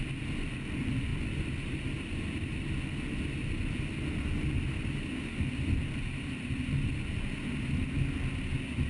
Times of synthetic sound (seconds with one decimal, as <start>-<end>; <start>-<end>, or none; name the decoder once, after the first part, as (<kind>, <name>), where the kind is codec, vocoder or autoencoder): none